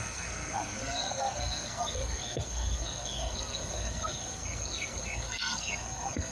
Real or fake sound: fake